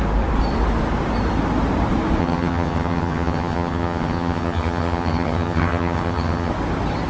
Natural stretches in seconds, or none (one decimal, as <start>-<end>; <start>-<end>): 0.0-2.2; 6.5-7.1